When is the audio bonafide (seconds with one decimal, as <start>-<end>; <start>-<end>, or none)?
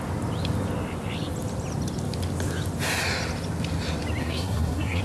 0.0-4.2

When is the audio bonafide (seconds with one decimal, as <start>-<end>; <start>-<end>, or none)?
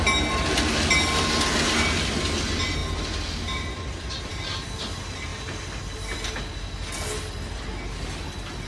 0.0-8.7